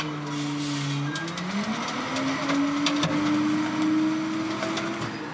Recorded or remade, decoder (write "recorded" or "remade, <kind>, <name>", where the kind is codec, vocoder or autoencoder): recorded